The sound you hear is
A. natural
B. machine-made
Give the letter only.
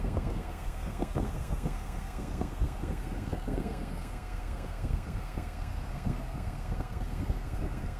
B